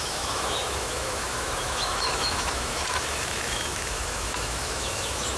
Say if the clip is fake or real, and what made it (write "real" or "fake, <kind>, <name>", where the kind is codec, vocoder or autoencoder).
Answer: fake, autoencoder, DAC-VAE